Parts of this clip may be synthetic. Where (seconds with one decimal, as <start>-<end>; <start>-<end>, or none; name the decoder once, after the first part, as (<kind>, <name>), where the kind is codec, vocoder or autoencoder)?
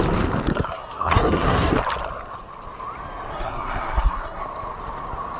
0.5-1.7 (codec, SNAC); 3.3-4.4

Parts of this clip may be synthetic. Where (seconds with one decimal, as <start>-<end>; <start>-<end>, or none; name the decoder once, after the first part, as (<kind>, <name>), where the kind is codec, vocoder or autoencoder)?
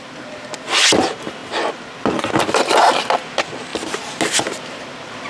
none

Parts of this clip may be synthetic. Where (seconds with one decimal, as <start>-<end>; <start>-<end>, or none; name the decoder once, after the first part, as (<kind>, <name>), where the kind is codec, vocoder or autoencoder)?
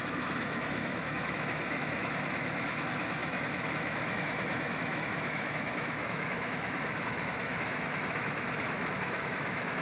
0.0-9.8 (autoencoder, DAC-VAE)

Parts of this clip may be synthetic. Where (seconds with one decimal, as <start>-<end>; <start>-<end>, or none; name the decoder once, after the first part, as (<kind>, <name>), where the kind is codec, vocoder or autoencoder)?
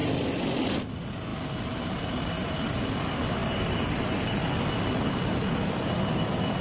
none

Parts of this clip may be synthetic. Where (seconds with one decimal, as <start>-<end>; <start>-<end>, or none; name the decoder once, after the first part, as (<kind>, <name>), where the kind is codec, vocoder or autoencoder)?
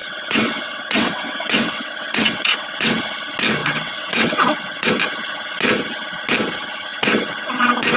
0.0-3.0 (vocoder, WaveNeXt); 3.6-4.9; 6.9-8.0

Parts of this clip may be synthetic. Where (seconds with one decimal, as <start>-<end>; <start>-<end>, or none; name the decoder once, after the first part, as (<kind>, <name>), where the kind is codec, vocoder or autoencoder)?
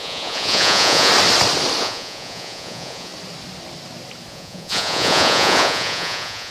0.0-1.1 (vocoder, Vocos); 1.8-3.1; 4.3-6.5